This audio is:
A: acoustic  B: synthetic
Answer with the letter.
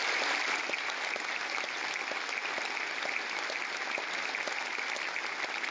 A